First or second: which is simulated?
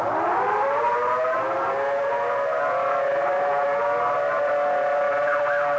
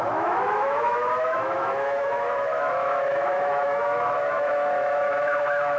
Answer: second